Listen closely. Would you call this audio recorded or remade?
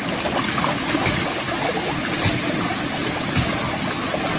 recorded